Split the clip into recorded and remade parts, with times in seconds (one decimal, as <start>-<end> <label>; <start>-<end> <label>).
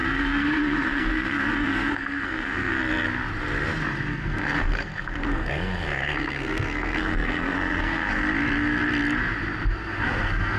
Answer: 0.0-2.7 remade; 2.7-4.1 recorded; 4.1-8.2 remade; 8.2-9.7 recorded; 9.7-10.6 remade